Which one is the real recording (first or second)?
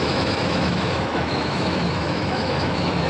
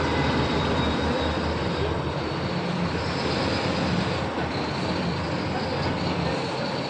second